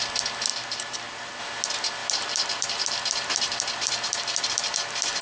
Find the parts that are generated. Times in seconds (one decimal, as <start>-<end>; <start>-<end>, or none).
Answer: 0.5-1.4; 2.0-5.2